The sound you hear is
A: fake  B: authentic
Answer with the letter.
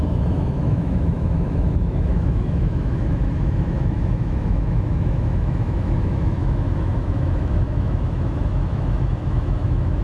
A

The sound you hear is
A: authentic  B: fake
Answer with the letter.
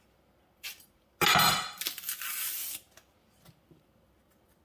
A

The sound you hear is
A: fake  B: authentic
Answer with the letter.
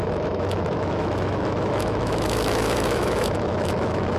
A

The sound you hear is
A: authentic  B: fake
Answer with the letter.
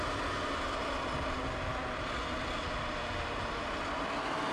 A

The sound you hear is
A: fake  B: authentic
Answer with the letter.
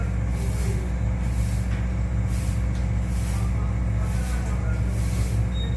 B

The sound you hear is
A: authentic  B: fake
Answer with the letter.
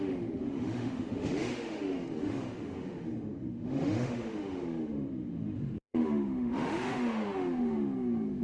B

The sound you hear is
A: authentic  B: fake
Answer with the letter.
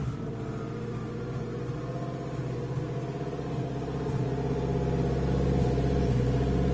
A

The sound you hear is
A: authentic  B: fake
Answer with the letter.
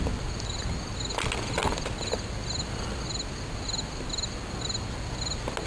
A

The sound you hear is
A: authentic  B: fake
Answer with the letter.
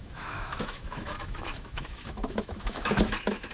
B